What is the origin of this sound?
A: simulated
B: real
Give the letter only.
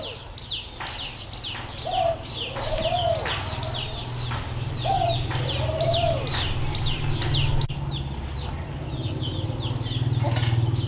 B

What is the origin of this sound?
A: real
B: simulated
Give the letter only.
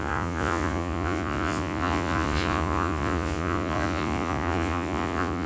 B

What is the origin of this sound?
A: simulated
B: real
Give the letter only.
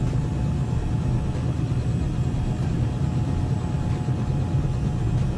B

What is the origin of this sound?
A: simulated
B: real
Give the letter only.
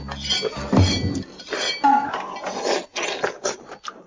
B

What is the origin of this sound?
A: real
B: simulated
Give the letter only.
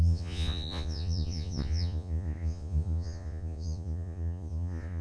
B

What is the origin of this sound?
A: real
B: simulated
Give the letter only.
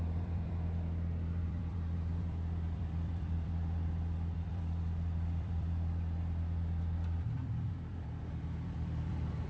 B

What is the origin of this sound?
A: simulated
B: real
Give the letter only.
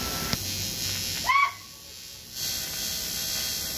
B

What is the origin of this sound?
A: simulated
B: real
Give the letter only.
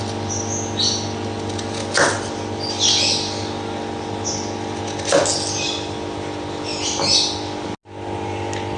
B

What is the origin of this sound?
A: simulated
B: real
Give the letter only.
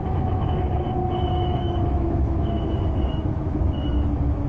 A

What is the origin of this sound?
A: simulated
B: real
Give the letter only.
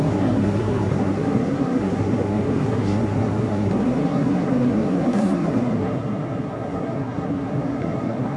A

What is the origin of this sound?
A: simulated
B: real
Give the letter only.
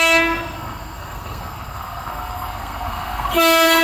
A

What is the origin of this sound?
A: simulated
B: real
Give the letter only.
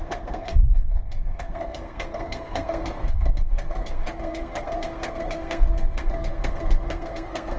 A